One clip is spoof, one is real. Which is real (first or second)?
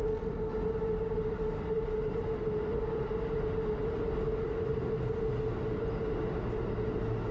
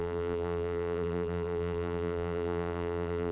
first